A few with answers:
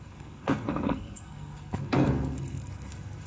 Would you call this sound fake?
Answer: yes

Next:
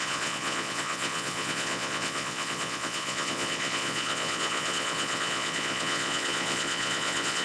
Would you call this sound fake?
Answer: yes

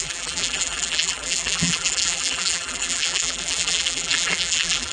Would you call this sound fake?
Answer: yes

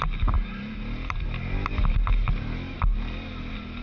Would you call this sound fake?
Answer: no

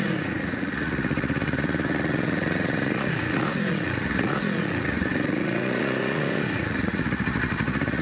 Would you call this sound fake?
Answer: yes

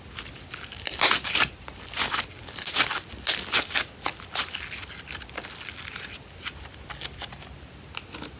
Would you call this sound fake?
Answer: no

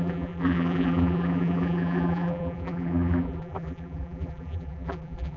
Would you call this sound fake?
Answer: yes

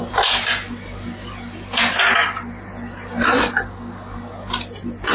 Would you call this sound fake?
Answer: no